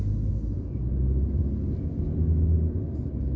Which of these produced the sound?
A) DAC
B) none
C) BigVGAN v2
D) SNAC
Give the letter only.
B